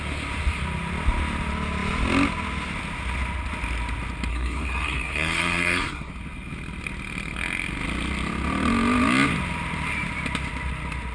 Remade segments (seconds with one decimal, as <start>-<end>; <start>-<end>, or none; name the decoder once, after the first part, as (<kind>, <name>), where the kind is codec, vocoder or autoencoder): 4.3-6.1 (codec, SNAC)